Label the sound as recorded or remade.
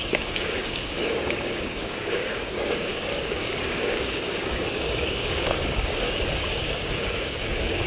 remade